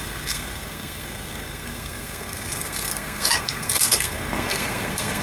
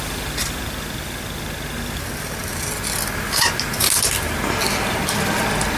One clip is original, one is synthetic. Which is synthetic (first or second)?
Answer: first